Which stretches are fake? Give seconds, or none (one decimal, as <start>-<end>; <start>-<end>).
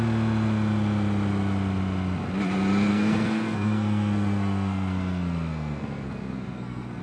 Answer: 2.9-7.0